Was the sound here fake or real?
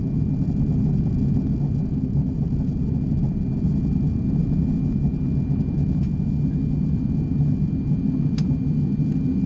real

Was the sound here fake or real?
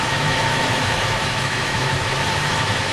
fake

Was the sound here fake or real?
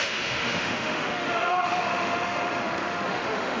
fake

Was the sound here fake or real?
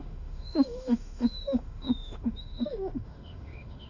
fake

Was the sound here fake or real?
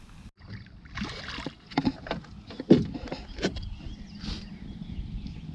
real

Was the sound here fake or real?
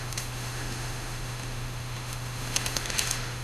fake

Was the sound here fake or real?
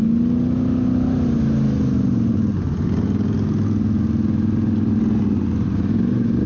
real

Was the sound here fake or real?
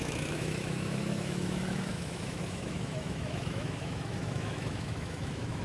fake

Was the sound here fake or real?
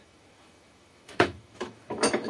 fake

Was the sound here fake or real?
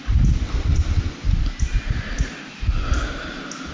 real